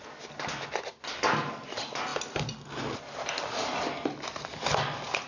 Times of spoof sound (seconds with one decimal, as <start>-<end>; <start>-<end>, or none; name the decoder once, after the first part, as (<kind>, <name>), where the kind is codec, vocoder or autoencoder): none